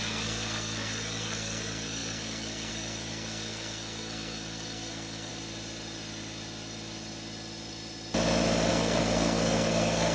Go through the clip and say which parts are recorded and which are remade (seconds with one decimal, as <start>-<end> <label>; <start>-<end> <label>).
0.0-5.3 remade; 5.3-8.7 recorded; 8.7-10.1 remade